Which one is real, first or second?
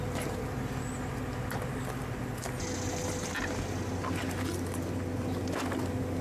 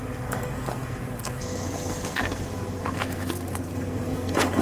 first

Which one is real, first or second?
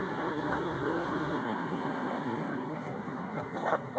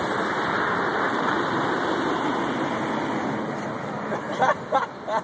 second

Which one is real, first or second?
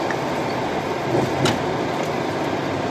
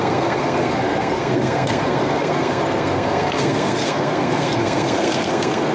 first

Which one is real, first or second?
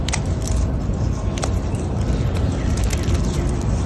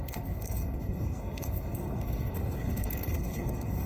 first